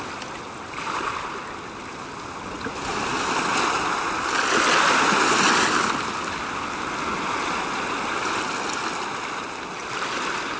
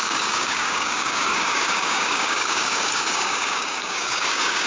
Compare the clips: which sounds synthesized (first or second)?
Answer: second